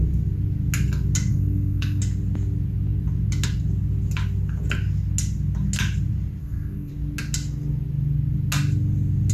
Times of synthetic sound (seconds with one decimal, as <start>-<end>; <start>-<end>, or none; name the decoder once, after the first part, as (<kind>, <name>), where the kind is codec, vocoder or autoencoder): 1.3-2.0 (codec, SNAC); 6.4-6.9